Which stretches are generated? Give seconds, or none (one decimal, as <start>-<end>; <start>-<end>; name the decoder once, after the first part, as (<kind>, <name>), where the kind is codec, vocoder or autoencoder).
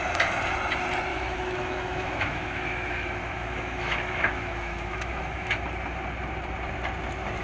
1.1-5.5 (autoencoder, DAC-VAE)